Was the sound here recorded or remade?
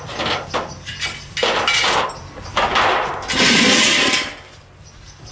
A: recorded